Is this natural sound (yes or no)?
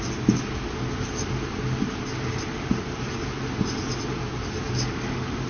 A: yes